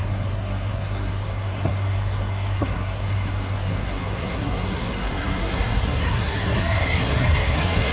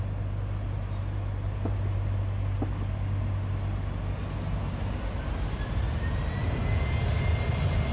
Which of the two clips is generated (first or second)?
first